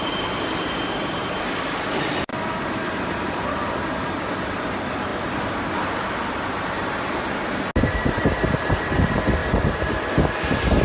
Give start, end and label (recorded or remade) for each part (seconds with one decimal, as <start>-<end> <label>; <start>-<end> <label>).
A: 0.0-2.3 recorded; 2.3-3.5 remade; 3.5-9.4 recorded; 9.4-10.8 remade